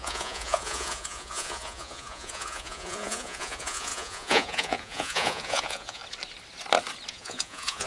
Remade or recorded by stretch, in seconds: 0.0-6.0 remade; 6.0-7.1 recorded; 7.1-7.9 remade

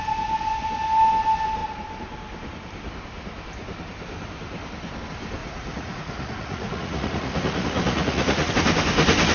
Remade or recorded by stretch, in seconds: 0.0-5.4 recorded; 5.4-8.5 remade; 8.5-9.3 recorded

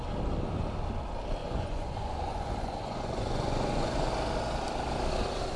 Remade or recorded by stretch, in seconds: 0.0-1.4 recorded; 1.4-4.1 remade; 4.1-5.6 recorded

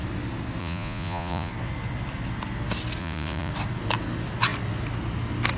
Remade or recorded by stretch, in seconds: 0.0-0.6 recorded; 0.6-1.5 remade; 1.5-3.0 recorded; 3.0-3.5 remade; 3.5-5.6 recorded